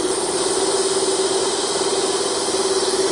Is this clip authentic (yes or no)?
yes